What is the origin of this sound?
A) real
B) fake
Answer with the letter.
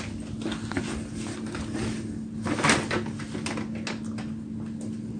A